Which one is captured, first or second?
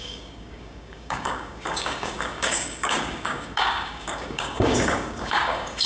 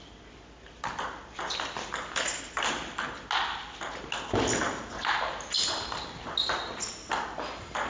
second